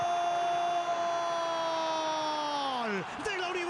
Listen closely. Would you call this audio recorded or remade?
recorded